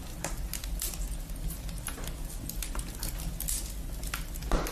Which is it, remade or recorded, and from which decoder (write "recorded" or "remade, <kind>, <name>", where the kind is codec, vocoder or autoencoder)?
recorded